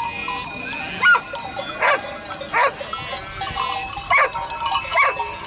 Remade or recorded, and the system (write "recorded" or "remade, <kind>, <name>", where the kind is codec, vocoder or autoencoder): recorded